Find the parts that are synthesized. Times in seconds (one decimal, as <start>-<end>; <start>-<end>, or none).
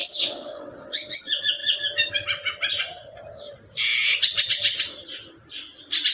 0.0-1.2